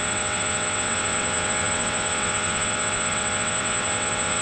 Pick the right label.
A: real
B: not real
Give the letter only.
B